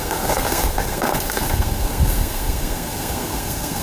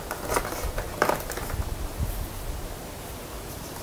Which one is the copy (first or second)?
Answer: first